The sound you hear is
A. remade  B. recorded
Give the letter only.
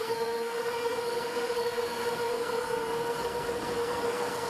A